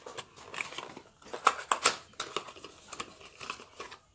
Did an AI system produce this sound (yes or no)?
no